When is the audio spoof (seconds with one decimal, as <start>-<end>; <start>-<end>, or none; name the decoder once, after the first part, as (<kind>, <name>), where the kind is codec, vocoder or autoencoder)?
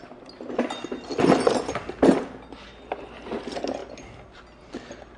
none